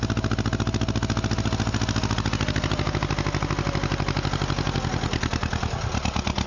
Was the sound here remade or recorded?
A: recorded